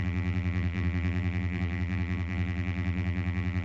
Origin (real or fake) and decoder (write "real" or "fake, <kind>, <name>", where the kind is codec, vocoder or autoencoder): fake, vocoder, BigVGAN v2